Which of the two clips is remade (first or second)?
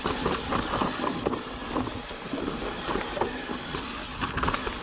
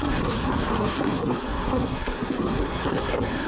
second